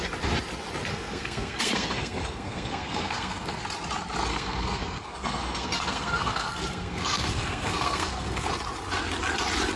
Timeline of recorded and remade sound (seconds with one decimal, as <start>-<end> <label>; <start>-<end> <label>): 0.0-0.9 recorded; 0.9-3.6 remade; 3.6-4.3 recorded; 4.3-8.5 remade; 8.5-9.8 recorded